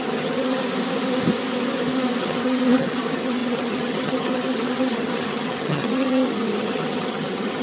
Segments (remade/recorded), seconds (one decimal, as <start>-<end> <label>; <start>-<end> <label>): 0.0-0.6 remade; 0.6-2.2 recorded; 2.2-7.6 remade